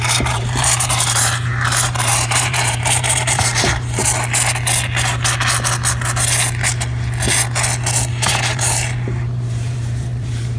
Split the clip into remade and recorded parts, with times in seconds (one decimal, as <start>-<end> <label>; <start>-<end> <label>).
0.0-4.0 remade; 4.0-8.1 recorded; 8.1-10.6 remade